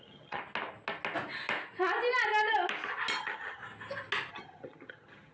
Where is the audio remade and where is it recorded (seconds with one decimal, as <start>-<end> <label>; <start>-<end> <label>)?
0.0-0.4 remade; 0.4-3.2 recorded; 3.2-3.6 remade; 3.6-4.3 recorded; 4.3-5.3 remade